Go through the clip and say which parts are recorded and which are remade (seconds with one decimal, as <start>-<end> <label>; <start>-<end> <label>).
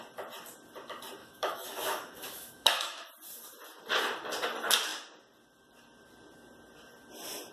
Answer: 0.0-1.2 recorded; 1.2-3.1 remade; 3.1-7.5 recorded